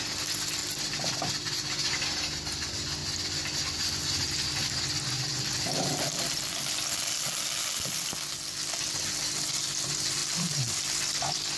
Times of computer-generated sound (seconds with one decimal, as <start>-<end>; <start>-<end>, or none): 0.6-1.3; 10.2-11.2

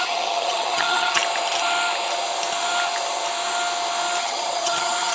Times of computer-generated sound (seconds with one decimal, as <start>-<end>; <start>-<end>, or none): 0.0-1.2; 4.2-5.1

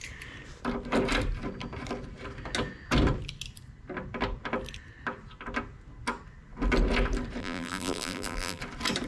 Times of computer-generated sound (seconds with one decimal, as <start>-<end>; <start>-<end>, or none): 7.4-8.6

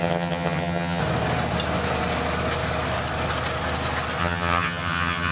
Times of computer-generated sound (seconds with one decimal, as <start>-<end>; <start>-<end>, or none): 0.0-1.0; 4.2-5.3

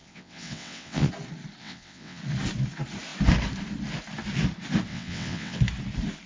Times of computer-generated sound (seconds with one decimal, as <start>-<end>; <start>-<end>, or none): 0.0-1.1; 1.6-2.2; 4.9-5.6

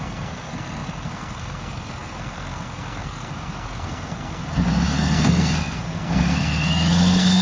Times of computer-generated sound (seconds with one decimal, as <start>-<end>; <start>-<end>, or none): 0.0-7.4